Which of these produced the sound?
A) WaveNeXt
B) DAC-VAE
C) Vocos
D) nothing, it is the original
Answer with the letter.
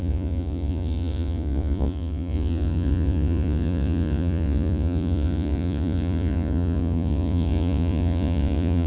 C